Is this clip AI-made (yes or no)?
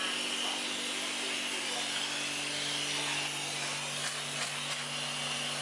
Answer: no